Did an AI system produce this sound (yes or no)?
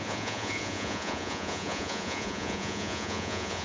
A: yes